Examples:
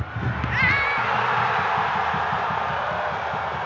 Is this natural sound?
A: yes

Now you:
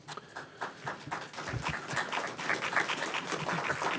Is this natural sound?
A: yes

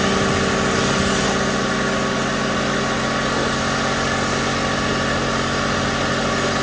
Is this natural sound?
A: yes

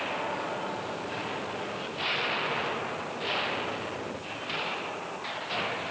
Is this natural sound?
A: yes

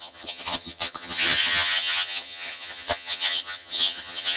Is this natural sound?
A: no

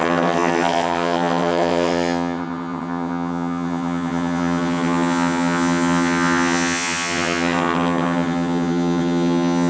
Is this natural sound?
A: no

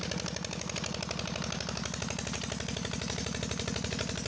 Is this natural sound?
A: yes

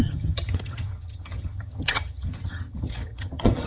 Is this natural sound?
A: no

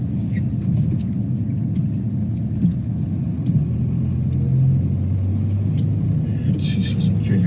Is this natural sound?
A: yes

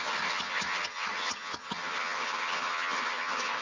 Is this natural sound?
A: no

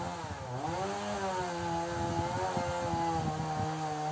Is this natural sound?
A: yes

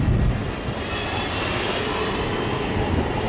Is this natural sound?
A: yes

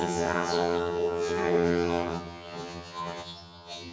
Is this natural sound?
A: no